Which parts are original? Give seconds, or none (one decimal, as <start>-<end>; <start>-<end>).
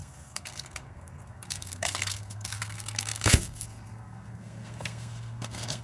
none